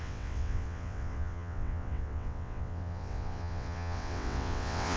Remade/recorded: remade